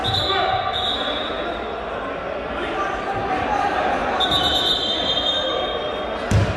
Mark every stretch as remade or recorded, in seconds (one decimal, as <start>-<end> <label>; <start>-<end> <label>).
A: 0.0-4.0 recorded; 4.0-5.6 remade; 5.6-6.6 recorded